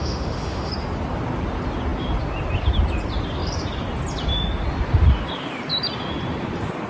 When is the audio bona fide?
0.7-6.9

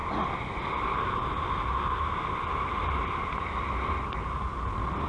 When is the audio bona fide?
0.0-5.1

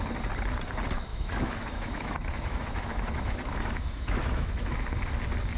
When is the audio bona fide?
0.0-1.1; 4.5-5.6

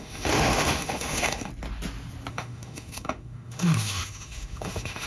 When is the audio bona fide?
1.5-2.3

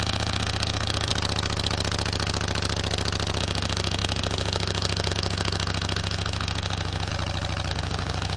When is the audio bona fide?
1.1-3.4; 7.1-7.7

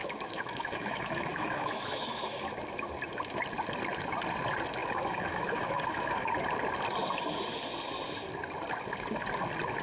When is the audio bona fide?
2.4-4.8; 6.3-9.8